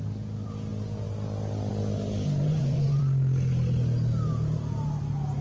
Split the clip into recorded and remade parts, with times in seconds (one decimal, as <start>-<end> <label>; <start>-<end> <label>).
0.0-2.5 recorded; 2.5-3.0 remade; 3.0-5.4 recorded